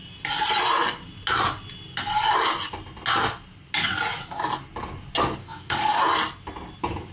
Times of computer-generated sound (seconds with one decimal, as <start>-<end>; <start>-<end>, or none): 5.4-6.0